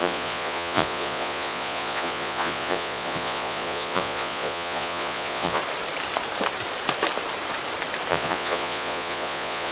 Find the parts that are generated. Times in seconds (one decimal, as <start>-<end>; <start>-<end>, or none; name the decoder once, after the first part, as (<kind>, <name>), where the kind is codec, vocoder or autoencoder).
0.0-5.6 (vocoder, Vocos); 8.1-9.7